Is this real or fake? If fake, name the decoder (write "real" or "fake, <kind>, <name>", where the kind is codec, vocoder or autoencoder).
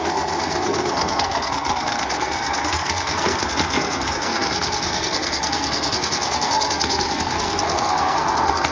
fake, codec, SNAC